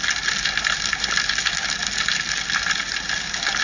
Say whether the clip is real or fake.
real